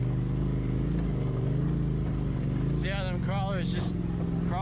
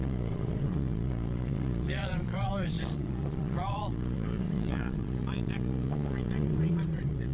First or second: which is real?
first